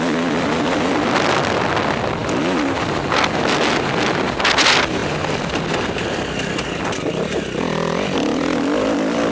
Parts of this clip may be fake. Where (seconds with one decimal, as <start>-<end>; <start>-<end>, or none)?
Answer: none